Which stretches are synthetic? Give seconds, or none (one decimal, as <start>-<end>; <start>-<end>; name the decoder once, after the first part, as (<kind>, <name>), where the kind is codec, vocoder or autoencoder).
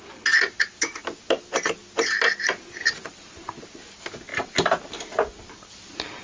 none